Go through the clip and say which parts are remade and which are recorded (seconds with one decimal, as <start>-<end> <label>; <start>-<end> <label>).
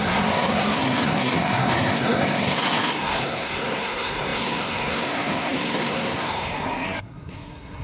0.0-7.8 remade